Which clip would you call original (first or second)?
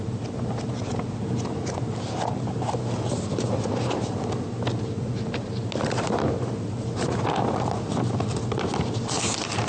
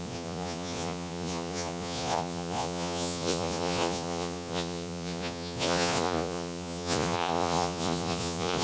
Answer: first